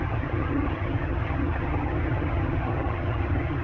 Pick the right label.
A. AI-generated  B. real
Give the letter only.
A